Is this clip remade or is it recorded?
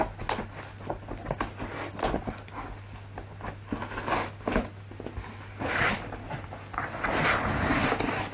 recorded